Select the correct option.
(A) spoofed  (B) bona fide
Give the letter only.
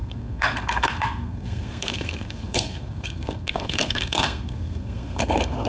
A